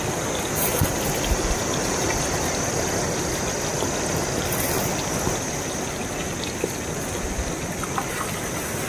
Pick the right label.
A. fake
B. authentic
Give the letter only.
B